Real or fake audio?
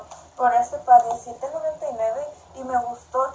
real